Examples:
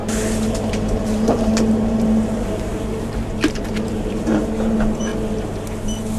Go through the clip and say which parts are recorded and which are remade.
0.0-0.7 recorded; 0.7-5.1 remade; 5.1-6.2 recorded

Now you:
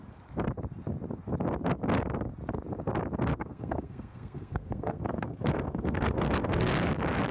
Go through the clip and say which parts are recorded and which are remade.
0.0-3.3 recorded; 3.3-6.7 remade; 6.7-7.3 recorded

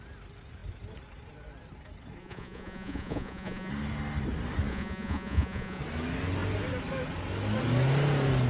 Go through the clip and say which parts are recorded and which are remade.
0.0-2.2 recorded; 2.2-3.7 remade; 3.7-4.7 recorded; 4.7-5.8 remade; 5.8-8.5 recorded

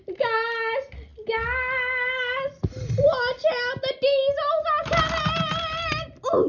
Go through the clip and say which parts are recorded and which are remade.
0.0-6.5 recorded

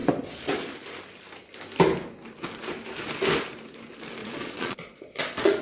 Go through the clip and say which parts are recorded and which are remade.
0.0-4.2 recorded; 4.2-5.6 remade